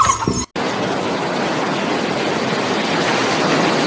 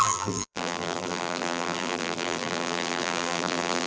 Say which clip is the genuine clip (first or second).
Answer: first